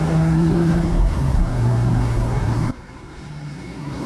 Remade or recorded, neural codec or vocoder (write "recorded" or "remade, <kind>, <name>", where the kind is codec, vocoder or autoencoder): remade, codec, SNAC